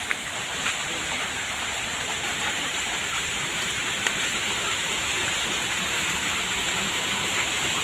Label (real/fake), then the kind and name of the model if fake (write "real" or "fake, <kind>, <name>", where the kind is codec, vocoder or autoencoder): fake, vocoder, BigVGAN v2